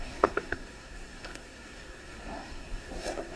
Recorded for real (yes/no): no